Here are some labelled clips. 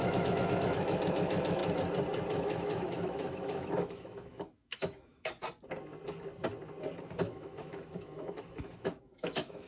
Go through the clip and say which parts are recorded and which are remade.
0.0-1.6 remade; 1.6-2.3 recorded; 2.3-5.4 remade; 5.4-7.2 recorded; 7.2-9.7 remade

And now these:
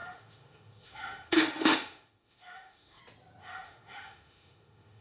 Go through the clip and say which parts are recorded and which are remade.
0.0-3.0 remade; 3.0-3.4 recorded; 3.4-5.0 remade

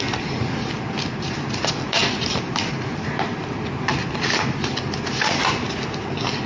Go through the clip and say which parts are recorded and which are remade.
0.0-6.5 recorded

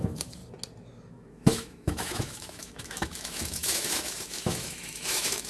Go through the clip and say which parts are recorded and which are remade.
0.0-0.4 remade; 0.4-1.1 recorded; 1.1-5.5 remade

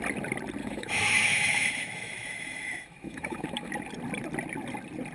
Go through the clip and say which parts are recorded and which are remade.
0.0-0.6 recorded; 0.6-3.7 remade; 3.7-5.1 recorded

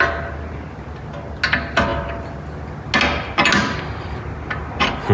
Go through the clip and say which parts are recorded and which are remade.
0.0-5.1 recorded

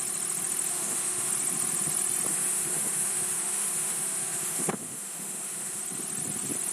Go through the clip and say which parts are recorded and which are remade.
0.0-0.7 recorded; 0.7-1.3 remade; 1.3-2.3 recorded; 2.3-5.8 remade; 5.8-6.7 recorded

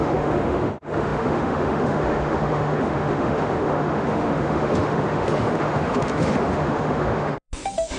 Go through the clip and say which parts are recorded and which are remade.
0.0-8.0 remade